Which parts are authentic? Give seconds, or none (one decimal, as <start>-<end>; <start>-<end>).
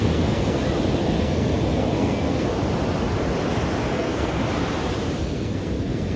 0.6-1.2; 2.5-3.9; 4.4-5.2